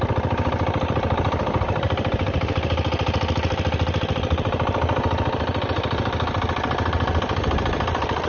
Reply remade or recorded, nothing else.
recorded